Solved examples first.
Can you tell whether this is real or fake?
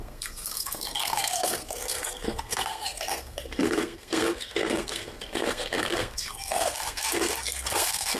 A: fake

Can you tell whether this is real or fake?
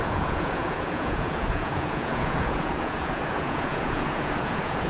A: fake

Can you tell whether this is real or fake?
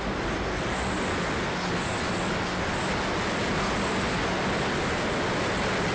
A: real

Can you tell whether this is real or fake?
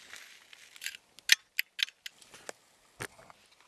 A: real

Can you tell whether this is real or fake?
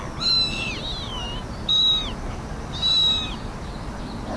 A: real